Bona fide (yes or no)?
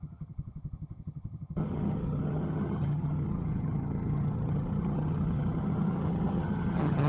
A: no